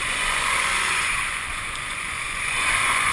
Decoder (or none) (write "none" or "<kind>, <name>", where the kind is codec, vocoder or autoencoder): vocoder, Vocos